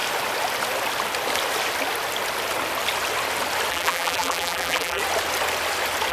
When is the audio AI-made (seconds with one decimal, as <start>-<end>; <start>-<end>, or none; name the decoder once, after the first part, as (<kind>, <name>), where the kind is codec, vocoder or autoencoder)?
3.7-5.0 (vocoder, BigVGAN v2)